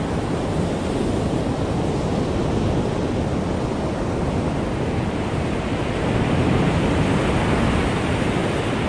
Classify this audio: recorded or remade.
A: recorded